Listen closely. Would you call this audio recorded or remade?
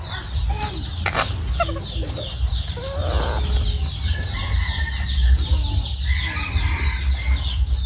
recorded